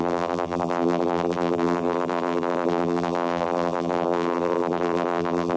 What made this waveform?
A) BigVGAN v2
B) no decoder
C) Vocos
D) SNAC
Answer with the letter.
A